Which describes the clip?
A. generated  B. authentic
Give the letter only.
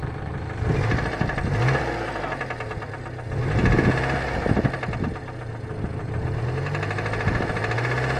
B